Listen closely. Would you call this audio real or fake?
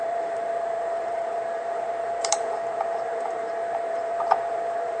fake